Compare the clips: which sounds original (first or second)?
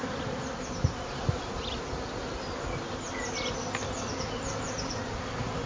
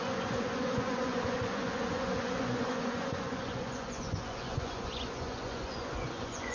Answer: first